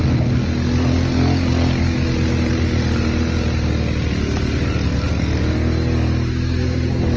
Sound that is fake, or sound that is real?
real